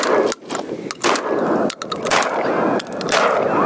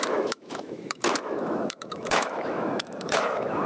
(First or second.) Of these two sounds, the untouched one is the first